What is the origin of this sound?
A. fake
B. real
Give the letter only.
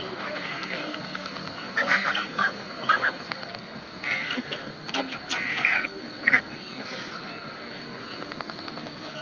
A